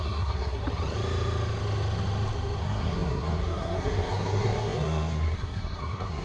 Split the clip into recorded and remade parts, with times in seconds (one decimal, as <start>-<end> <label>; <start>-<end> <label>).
0.0-0.6 remade; 0.6-2.6 recorded; 2.6-6.2 remade